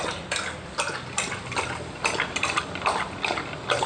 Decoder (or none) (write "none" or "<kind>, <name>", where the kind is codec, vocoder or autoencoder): none